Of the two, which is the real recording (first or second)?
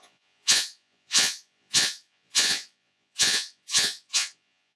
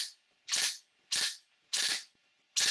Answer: second